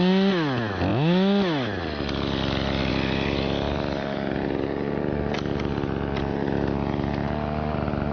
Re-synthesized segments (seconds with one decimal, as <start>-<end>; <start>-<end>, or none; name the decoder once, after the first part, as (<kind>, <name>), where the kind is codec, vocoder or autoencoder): none